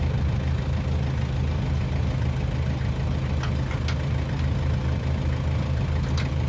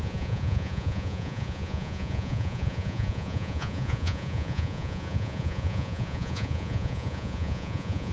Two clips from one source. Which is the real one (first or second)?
first